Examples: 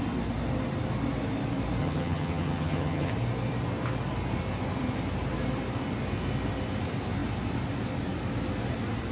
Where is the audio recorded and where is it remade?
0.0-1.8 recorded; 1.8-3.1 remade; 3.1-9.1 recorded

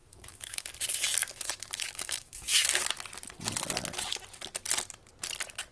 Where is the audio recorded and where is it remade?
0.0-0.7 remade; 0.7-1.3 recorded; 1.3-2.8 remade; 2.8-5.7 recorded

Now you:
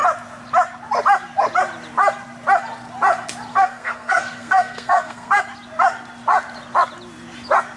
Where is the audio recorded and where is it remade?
0.0-3.5 recorded; 3.5-5.4 remade; 5.4-7.8 recorded

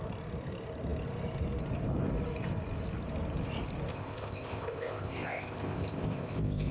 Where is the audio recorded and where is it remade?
0.0-3.9 recorded; 3.9-6.7 remade